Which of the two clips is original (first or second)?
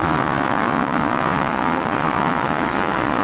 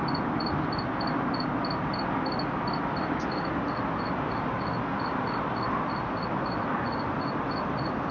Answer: second